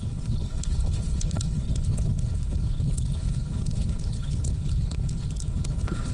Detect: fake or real fake